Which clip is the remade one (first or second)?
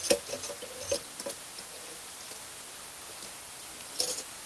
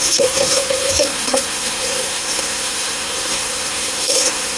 second